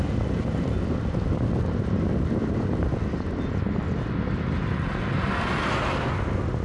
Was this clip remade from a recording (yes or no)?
no